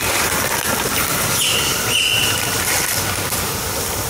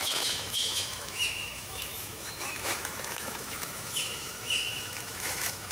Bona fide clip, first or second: first